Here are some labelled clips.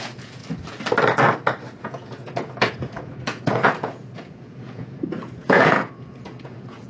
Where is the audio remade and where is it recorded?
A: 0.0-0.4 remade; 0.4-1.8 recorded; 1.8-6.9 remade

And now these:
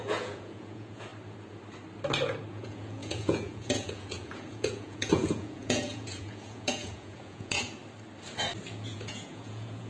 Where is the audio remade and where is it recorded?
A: 0.0-1.1 remade; 1.1-2.5 recorded; 2.5-7.8 remade; 7.8-8.7 recorded; 8.7-9.9 remade

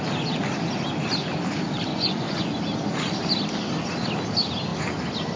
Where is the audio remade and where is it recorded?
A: 0.0-1.9 recorded; 1.9-2.6 remade; 2.6-5.4 recorded